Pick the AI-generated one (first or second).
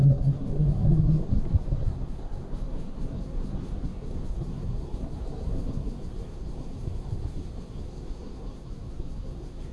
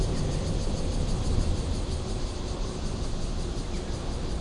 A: first